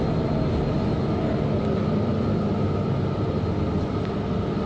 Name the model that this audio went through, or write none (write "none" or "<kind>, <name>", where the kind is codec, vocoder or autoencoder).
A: none